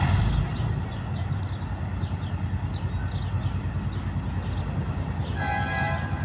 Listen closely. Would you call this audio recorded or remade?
recorded